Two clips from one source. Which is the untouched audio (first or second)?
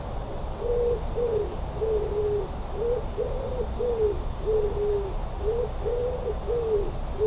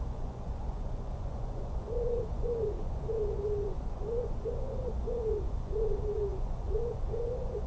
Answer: first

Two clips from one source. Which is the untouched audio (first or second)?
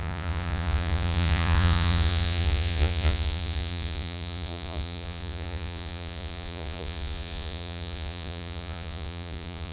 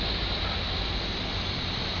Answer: second